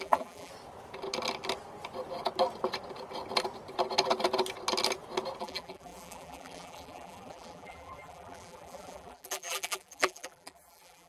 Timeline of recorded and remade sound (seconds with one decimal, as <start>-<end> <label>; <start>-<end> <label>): 0.0-0.5 remade; 0.5-5.4 recorded; 5.4-11.1 remade